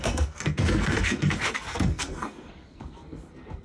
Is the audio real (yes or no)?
no